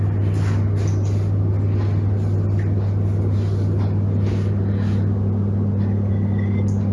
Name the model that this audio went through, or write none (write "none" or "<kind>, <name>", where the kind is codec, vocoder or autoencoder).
none